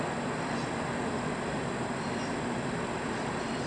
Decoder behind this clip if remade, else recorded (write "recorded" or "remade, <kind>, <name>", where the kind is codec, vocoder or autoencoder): recorded